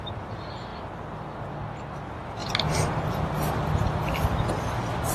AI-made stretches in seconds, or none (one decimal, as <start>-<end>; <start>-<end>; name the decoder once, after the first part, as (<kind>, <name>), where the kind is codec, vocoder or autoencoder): none